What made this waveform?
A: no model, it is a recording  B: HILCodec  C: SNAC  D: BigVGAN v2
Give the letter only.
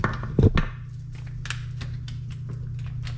A